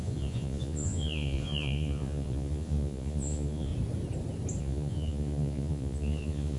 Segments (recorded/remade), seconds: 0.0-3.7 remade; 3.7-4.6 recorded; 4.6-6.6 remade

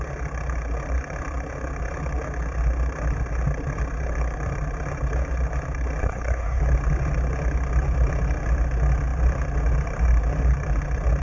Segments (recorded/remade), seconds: 0.0-6.0 recorded; 6.0-6.6 remade; 6.6-11.2 recorded

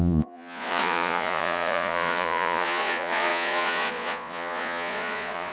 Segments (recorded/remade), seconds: 0.0-5.5 remade

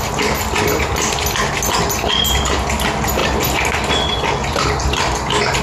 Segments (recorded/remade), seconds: 0.0-5.6 recorded

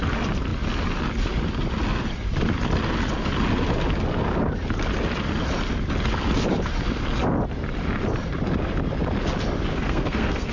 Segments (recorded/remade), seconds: 0.0-9.7 recorded; 9.7-10.5 remade